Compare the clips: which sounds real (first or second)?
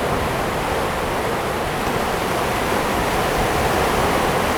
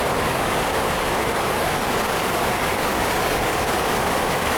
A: first